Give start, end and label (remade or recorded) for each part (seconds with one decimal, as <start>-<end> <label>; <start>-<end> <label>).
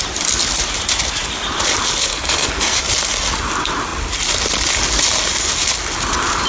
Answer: 0.0-2.1 recorded; 2.1-2.8 remade; 2.8-6.5 recorded